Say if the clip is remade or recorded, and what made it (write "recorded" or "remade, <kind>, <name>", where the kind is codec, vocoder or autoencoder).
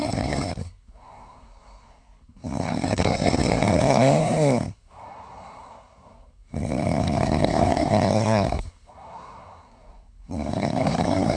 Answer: remade, codec, SNAC